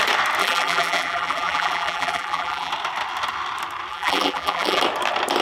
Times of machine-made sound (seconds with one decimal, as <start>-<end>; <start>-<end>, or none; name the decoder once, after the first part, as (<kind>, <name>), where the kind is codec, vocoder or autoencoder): 0.4-2.7 (vocoder, BigVGAN v2); 3.9-4.8